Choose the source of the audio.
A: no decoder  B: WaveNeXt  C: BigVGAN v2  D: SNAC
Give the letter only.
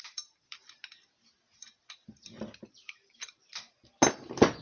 A